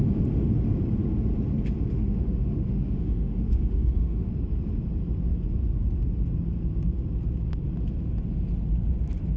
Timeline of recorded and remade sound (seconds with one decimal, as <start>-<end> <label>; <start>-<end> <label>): 0.0-1.9 recorded; 1.9-4.3 remade; 4.3-9.4 recorded